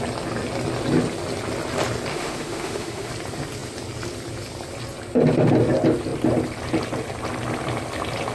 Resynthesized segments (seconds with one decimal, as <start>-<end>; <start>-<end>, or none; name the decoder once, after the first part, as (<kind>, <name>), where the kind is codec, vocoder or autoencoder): 2.1-3.1 (autoencoder, DAC-VAE)